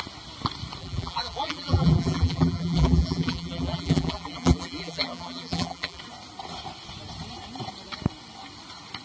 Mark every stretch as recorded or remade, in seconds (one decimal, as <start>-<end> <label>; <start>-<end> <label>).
0.0-0.8 recorded; 0.8-6.0 remade; 6.0-9.0 recorded